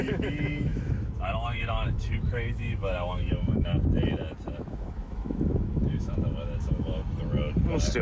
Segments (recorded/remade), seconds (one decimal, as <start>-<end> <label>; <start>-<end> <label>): 0.0-3.7 remade; 3.7-4.5 recorded; 4.5-7.0 remade; 7.0-8.0 recorded